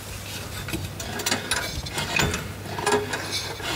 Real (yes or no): yes